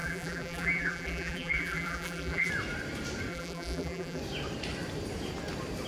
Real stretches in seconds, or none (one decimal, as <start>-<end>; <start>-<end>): 2.5-3.3; 4.2-5.9